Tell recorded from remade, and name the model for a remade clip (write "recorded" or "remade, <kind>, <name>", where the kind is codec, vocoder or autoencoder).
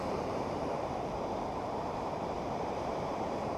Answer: remade, vocoder, BigVGAN v2